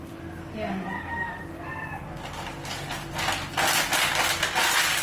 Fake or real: real